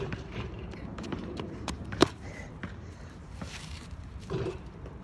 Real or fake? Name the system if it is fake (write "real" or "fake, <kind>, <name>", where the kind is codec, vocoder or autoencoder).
fake, vocoder, BigVGAN v2